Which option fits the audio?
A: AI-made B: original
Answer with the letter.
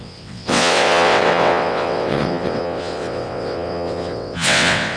A